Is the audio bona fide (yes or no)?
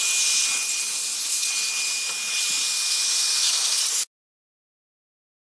yes